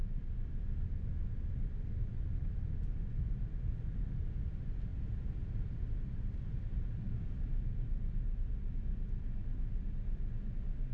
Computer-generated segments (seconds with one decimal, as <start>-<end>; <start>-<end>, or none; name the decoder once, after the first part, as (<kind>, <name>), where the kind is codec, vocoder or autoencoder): none